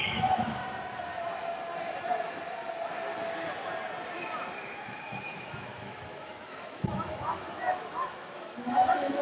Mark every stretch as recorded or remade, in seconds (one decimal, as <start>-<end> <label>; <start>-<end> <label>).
0.0-0.6 remade; 0.6-4.8 recorded; 4.8-9.2 remade